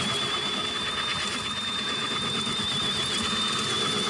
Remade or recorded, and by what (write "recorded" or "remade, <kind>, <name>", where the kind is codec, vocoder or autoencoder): recorded